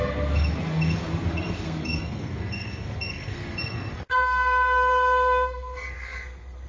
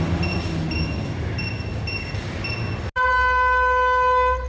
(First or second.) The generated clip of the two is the first